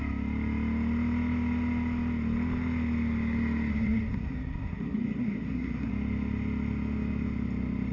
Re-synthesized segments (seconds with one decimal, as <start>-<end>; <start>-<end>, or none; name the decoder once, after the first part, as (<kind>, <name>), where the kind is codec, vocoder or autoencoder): 3.7-5.9 (codec, SNAC)